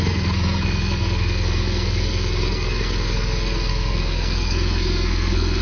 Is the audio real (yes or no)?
no